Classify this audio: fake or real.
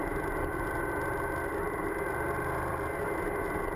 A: real